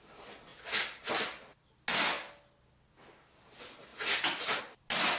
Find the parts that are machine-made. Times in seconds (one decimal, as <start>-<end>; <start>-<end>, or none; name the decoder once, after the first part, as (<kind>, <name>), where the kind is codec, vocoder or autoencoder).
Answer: none